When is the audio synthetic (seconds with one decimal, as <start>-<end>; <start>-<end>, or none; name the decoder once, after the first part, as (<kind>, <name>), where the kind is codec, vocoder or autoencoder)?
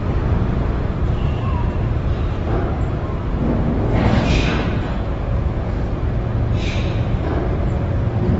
0.0-2.7 (vocoder, BigVGAN v2)